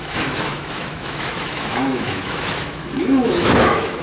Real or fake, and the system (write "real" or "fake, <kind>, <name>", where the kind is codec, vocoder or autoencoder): fake, autoencoder, DAC-VAE